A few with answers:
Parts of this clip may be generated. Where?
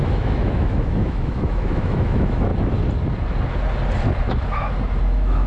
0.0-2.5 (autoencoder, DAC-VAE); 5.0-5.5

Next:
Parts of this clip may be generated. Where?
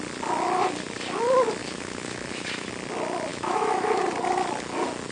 1.6-2.7 (autoencoder, DAC-VAE); 3.3-4.0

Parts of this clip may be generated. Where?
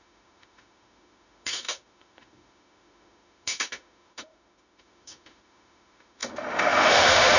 0.0-7.4 (autoencoder, DAC-VAE)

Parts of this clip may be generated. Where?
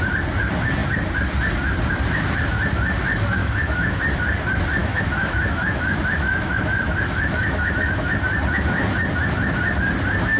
3.4-4.0 (autoencoder, DAC-VAE); 4.8-8.2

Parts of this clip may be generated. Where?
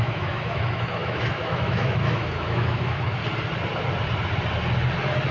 0.0-3.2 (autoencoder, DAC-VAE)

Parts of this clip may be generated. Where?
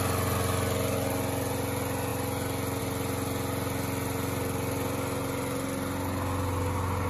none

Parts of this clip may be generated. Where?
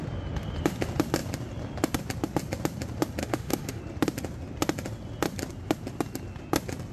3.2-3.8 (autoencoder, DAC-VAE)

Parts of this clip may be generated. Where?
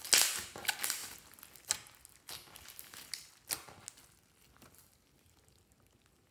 none